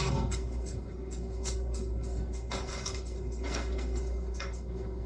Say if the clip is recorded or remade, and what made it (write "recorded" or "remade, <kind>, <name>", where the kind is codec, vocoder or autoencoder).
remade, codec, SNAC